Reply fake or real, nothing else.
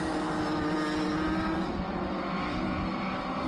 real